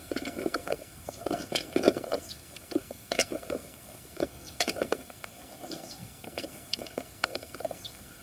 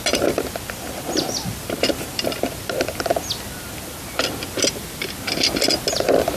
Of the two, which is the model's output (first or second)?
first